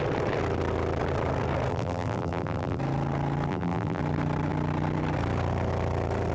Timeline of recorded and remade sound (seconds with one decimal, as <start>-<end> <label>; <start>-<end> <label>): 0.0-1.7 recorded; 1.7-2.8 remade; 2.8-3.5 recorded; 3.5-4.0 remade; 4.0-6.3 recorded